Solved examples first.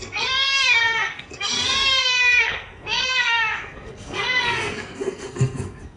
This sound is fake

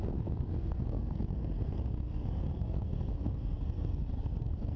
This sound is fake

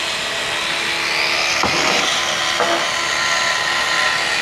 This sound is real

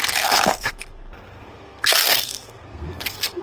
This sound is fake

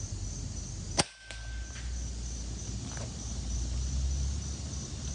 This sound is real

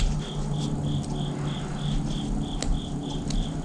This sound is real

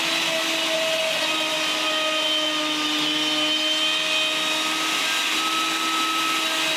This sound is real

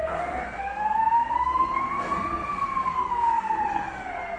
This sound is fake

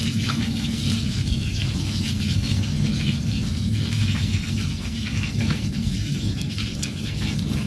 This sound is fake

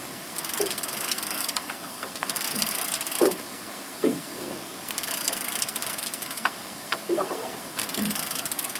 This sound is fake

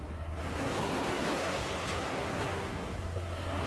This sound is fake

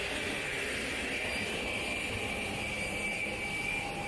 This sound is real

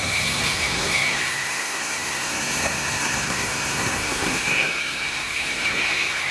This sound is fake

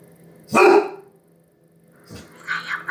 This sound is real